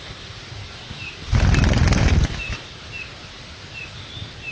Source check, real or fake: real